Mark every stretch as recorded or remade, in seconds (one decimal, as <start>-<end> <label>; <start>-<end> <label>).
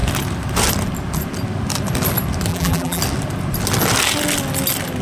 0.0-2.5 recorded; 2.5-3.0 remade; 3.0-5.0 recorded